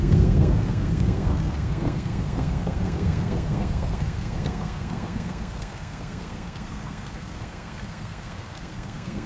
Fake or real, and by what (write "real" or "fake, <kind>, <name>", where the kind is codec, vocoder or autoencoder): fake, codec, SNAC